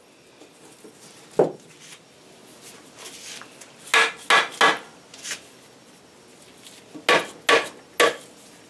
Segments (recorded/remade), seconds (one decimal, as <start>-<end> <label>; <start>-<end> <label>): 0.0-8.7 recorded